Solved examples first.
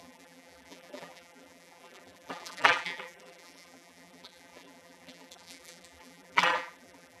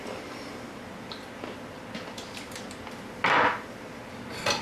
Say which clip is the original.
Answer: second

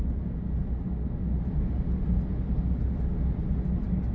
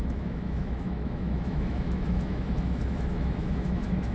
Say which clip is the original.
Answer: first